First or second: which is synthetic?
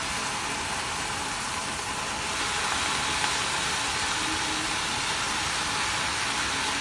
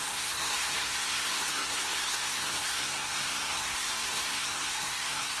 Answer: second